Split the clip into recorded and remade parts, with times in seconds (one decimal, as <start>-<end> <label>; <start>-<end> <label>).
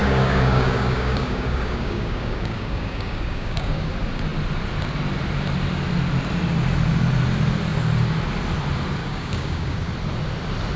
0.0-3.9 remade; 3.9-9.0 recorded; 9.0-9.9 remade; 9.9-10.8 recorded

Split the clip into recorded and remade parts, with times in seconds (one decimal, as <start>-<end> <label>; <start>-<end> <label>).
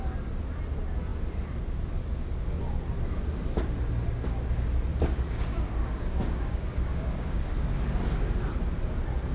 0.0-4.9 recorded; 4.9-7.7 remade; 7.7-9.3 recorded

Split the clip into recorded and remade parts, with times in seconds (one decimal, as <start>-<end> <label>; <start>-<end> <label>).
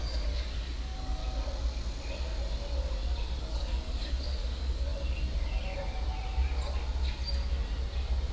0.0-1.2 remade; 1.2-3.4 recorded; 3.4-4.9 remade; 4.9-8.3 recorded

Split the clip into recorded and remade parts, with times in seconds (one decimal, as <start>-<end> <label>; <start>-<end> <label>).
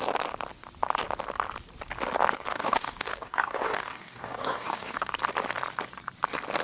0.0-2.5 recorded; 2.5-5.1 remade; 5.1-6.6 recorded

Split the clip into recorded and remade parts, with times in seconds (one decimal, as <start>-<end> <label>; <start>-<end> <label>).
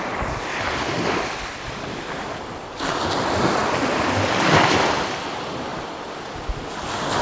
0.0-7.2 recorded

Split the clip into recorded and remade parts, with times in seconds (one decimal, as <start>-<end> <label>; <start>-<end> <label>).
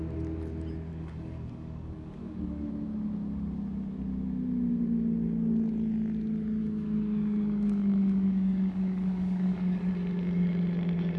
0.0-0.9 recorded; 0.9-2.7 remade; 2.7-6.6 recorded; 6.6-9.9 remade; 9.9-11.2 recorded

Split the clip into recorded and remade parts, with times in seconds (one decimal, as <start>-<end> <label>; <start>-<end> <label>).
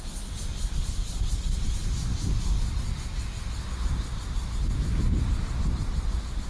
0.0-6.5 recorded